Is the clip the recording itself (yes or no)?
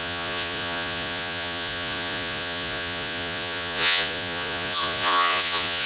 no